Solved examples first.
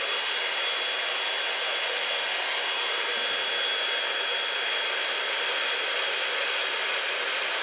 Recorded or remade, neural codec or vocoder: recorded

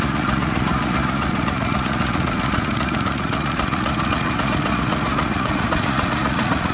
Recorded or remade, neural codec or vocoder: remade, vocoder, Vocos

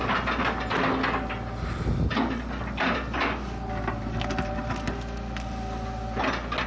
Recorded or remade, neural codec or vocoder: recorded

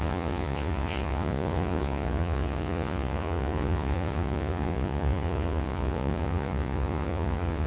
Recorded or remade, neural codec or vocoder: remade, vocoder, Vocos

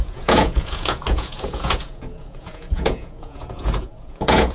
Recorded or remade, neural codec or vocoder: remade, vocoder, Vocos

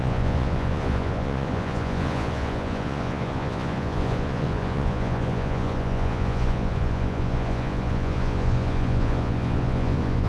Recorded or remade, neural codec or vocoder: remade, vocoder, Vocos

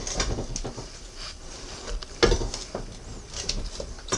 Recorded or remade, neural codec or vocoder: recorded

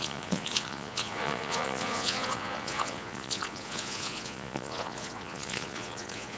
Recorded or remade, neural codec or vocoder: remade, vocoder, Vocos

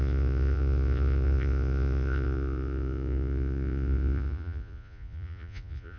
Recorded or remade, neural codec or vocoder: remade, vocoder, Vocos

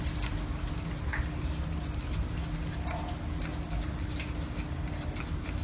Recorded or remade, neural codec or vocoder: recorded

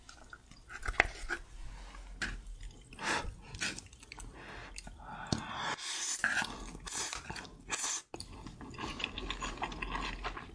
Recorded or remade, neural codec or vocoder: recorded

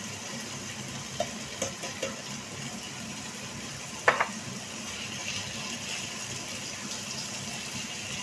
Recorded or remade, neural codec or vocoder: recorded